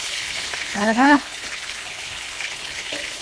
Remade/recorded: remade